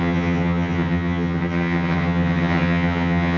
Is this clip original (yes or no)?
no